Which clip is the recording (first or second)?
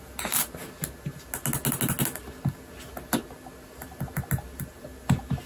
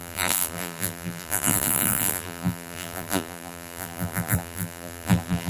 first